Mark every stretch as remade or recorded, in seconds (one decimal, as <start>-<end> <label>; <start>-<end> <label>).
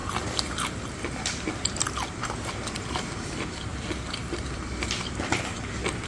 0.0-0.9 remade; 0.9-3.7 recorded; 3.7-4.6 remade; 4.6-6.1 recorded